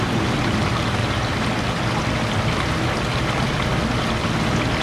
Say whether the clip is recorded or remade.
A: recorded